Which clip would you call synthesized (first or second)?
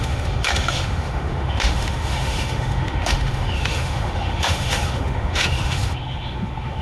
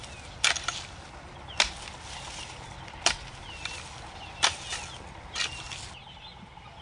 first